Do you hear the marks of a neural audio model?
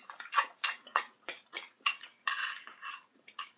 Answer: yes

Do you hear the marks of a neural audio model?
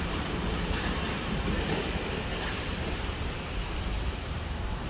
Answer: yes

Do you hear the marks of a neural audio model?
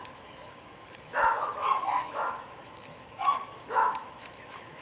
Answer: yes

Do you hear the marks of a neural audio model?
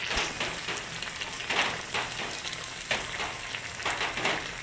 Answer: no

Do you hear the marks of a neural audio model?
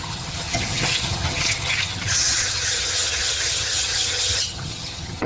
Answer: yes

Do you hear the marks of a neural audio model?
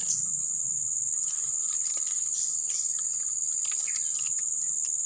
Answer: no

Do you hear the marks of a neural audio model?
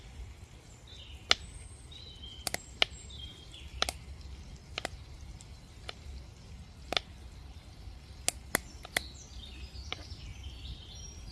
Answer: no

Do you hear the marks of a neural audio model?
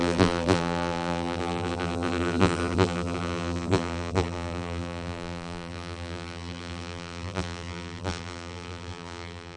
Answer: yes